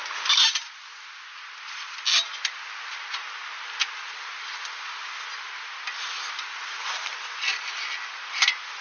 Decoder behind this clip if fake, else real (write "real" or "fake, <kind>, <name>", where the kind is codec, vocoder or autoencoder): real